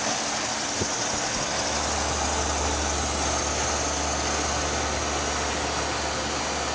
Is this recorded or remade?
recorded